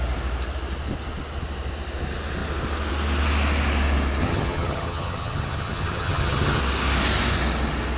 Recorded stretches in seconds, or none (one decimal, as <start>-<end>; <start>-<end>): 0.0-4.2; 6.6-8.0